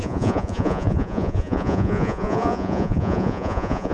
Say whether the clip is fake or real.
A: fake